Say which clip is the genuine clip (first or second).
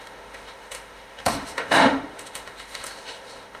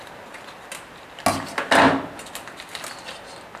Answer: second